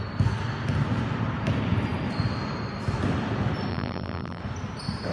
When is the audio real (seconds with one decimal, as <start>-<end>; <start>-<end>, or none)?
0.0-3.7; 4.4-5.1